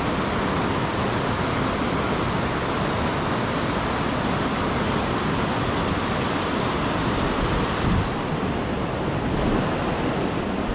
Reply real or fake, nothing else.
real